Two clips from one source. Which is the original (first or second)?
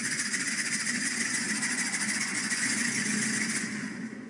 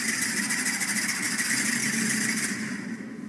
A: second